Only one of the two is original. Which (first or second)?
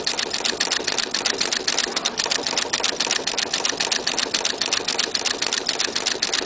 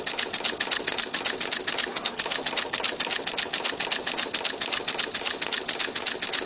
second